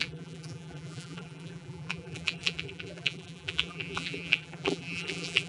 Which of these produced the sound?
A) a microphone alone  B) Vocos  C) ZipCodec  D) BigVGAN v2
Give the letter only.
D